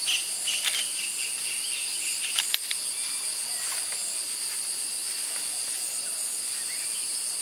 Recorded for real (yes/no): yes